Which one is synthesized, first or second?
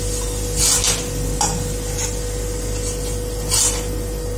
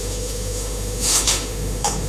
second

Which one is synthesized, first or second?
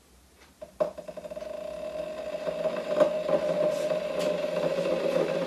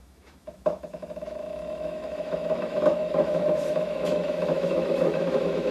second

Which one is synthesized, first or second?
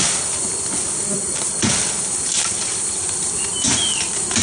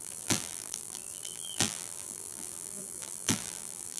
second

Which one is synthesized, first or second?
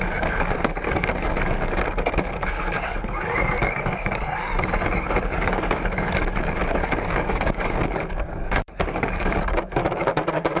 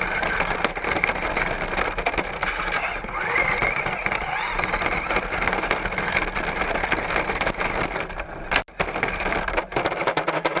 first